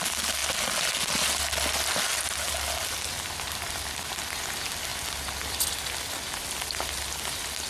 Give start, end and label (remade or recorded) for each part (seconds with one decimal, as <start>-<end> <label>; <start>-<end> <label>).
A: 0.0-7.7 recorded